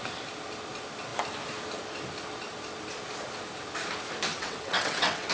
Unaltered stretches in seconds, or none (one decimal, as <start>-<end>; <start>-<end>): 0.0-4.3